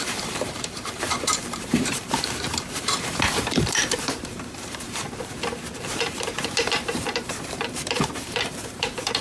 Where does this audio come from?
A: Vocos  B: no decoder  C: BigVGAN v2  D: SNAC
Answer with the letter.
C